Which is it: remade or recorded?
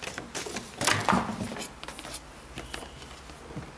recorded